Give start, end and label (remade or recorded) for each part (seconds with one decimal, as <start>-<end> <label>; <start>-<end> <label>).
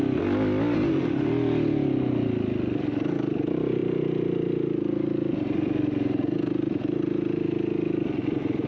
0.0-8.7 recorded